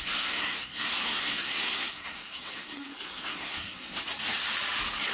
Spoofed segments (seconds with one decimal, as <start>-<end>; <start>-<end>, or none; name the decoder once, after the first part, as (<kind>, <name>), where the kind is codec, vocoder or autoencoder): 0.0-4.0 (codec, SNAC)